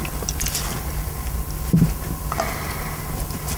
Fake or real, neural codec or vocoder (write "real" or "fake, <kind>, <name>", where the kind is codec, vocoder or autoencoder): real